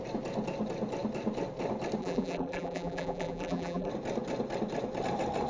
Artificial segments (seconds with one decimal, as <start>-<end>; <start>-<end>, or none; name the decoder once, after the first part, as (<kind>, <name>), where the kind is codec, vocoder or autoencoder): 2.0-3.9 (vocoder, BigVGAN v2)